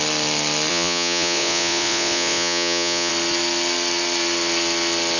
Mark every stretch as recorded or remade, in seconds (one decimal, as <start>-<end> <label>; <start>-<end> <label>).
0.0-0.7 recorded; 0.7-3.1 remade; 3.1-5.2 recorded